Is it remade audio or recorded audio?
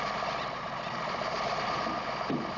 remade